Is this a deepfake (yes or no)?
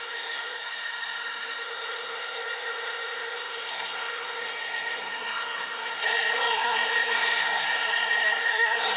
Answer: yes